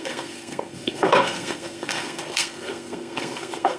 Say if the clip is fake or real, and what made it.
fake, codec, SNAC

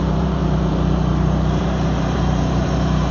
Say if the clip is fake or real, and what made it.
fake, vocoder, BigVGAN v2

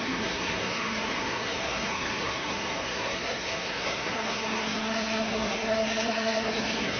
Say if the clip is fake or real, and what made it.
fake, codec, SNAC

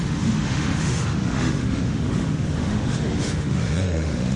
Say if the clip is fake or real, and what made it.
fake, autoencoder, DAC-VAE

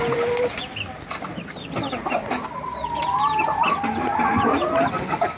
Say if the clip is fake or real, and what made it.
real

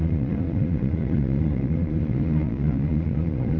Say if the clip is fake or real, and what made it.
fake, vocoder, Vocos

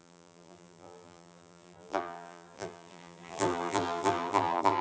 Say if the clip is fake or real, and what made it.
fake, vocoder, BigVGAN v2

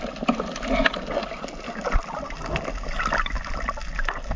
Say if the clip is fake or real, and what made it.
real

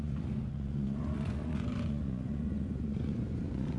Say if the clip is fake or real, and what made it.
fake, vocoder, Vocos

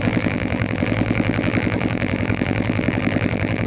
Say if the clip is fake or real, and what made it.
fake, vocoder, BigVGAN v2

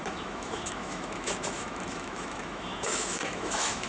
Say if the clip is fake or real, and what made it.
fake, autoencoder, DAC-VAE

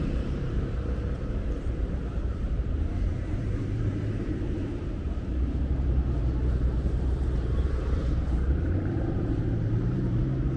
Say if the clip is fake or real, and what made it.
fake, vocoder, BigVGAN v2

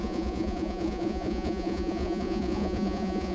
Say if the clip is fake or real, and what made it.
fake, vocoder, Vocos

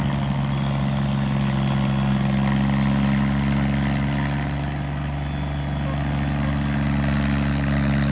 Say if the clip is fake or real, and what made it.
real